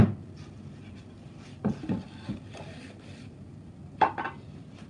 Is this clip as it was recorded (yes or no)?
yes